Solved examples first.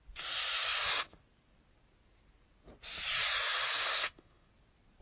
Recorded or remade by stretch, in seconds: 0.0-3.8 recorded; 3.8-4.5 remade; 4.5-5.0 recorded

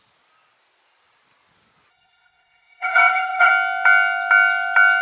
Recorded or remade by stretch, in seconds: 0.0-1.9 recorded; 1.9-3.5 remade; 3.5-5.0 recorded